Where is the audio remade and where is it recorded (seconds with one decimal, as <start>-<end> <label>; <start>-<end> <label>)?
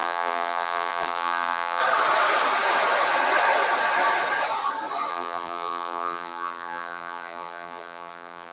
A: 0.0-1.8 remade; 1.8-5.1 recorded; 5.1-8.5 remade